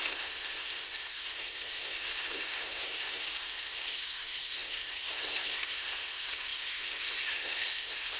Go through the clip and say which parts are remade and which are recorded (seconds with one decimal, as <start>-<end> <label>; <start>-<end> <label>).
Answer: 0.0-8.2 remade